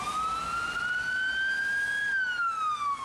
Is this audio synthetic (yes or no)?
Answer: no